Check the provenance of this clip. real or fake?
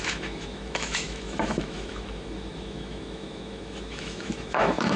fake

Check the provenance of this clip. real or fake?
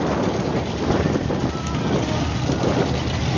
real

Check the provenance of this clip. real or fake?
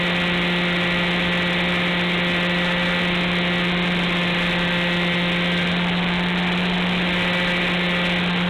real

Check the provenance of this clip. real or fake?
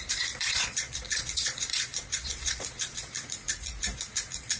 fake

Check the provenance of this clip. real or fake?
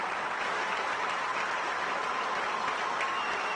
real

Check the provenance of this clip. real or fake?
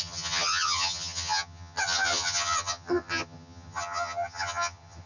fake